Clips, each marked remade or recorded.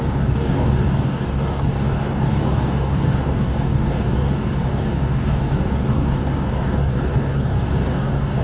remade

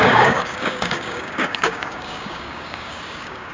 remade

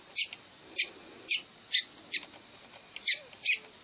recorded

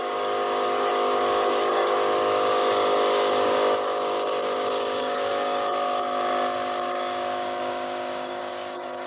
remade